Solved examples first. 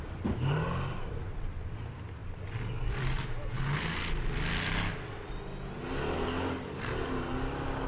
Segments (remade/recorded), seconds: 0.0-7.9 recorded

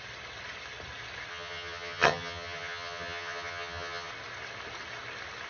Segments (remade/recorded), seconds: 0.0-1.3 recorded; 1.3-4.1 remade; 4.1-5.5 recorded

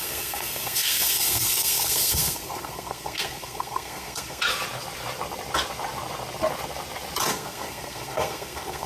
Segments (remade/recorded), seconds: 0.0-4.4 remade; 4.4-7.3 recorded; 7.3-8.9 remade

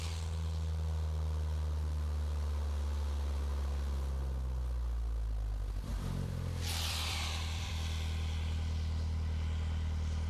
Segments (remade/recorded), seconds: 0.0-5.9 recorded; 5.9-7.7 remade; 7.7-10.3 recorded